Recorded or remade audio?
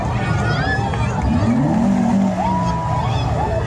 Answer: recorded